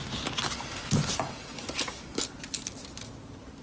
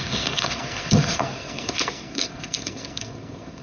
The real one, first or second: first